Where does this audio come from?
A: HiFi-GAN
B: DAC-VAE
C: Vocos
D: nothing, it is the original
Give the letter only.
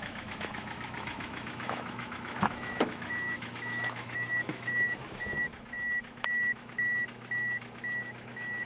B